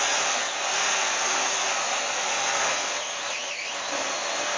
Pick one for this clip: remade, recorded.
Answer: recorded